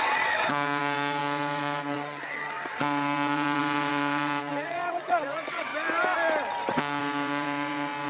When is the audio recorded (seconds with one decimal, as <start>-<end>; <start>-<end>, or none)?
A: 5.7-7.0